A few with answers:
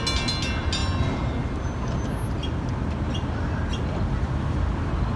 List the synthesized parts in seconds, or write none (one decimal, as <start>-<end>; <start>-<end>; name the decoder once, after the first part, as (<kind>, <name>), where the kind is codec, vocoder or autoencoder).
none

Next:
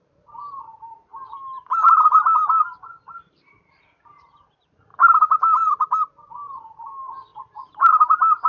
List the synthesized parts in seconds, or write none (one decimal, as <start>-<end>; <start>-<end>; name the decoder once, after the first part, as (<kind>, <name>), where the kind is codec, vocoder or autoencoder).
0.0-4.9 (vocoder, BigVGAN v2); 6.3-8.5

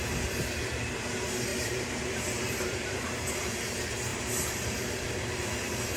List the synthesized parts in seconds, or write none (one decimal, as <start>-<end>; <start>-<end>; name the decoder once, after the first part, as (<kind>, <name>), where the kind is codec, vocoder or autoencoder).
1.5-3.3 (vocoder, BigVGAN v2); 4.1-5.1